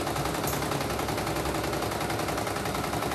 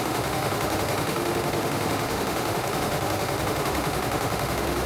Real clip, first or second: first